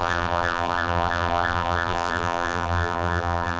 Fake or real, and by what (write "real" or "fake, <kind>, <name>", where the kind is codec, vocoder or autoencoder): fake, vocoder, BigVGAN v2